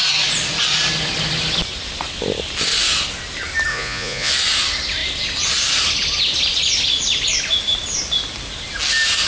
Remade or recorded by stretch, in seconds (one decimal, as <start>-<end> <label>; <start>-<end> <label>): 0.0-3.7 recorded; 3.7-4.3 remade; 4.3-9.3 recorded